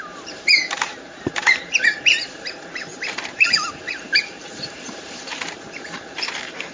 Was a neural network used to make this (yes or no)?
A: yes